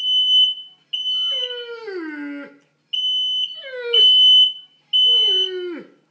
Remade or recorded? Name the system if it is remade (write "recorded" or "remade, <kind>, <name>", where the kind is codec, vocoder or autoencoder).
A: recorded